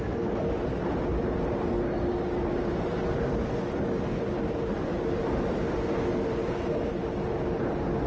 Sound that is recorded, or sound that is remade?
recorded